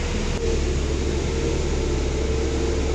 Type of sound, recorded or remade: recorded